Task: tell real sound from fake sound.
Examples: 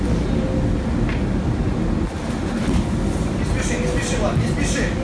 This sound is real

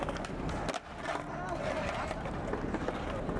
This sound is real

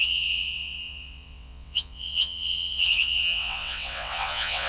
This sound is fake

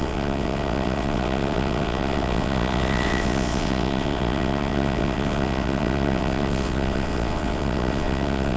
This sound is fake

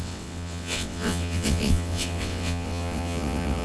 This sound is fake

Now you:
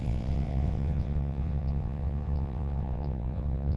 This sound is fake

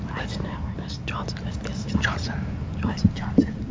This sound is real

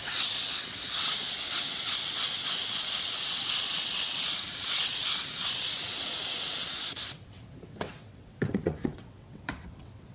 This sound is fake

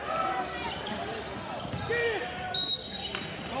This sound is real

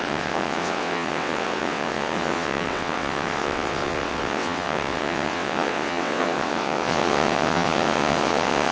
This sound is fake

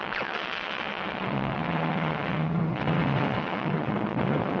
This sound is fake